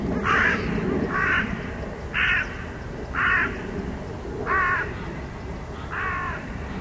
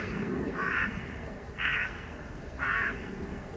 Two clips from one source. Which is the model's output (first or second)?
second